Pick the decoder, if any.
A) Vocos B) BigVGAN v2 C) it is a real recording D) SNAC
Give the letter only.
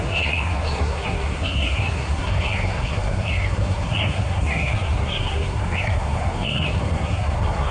D